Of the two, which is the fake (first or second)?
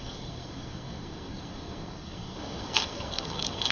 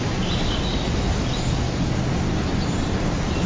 first